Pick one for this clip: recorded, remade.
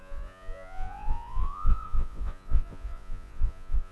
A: remade